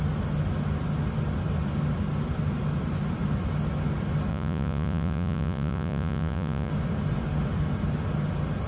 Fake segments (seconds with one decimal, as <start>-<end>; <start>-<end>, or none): 4.3-6.7